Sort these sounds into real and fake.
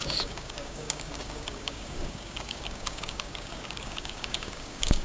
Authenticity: fake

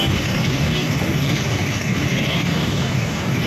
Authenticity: fake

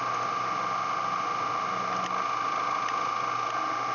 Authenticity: real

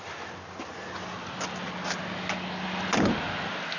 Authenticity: real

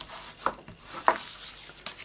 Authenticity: real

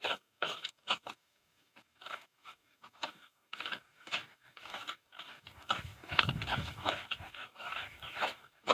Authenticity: fake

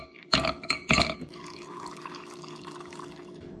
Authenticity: fake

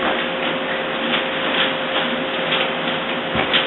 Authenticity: real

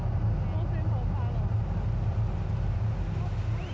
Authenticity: real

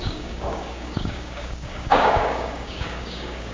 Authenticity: fake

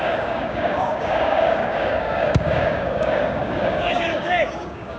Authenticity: fake